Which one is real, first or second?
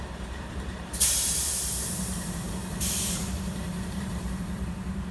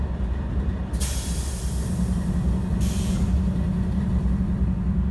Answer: second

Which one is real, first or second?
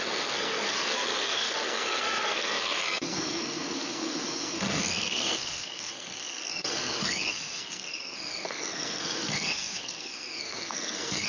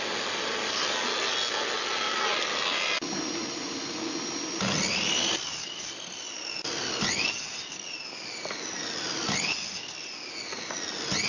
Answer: second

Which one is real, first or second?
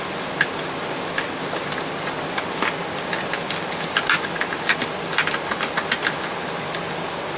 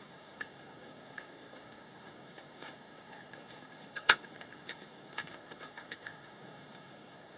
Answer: first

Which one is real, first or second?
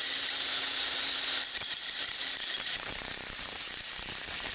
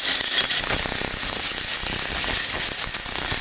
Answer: second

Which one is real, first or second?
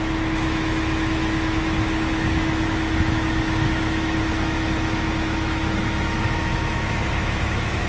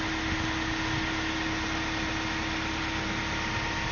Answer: second